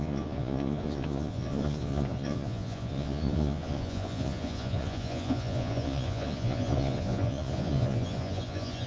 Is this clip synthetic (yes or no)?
yes